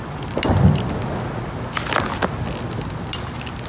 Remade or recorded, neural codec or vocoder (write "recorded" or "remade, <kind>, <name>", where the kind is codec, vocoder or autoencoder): recorded